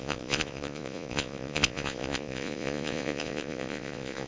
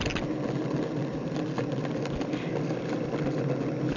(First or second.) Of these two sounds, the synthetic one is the first